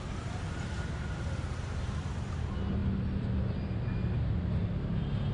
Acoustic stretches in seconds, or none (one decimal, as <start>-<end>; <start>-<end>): 0.0-5.3